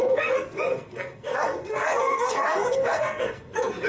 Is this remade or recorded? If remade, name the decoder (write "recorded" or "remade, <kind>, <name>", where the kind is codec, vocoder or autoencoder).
remade, codec, SNAC